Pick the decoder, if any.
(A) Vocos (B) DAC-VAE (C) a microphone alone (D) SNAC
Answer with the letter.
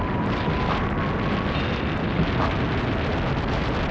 C